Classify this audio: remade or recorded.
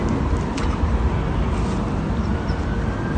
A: recorded